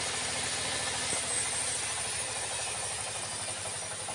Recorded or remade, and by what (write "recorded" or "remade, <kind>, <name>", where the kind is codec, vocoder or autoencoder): recorded